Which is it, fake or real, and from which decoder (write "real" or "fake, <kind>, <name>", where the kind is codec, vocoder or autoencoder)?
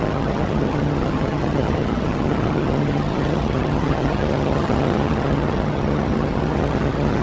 fake, vocoder, HiFi-GAN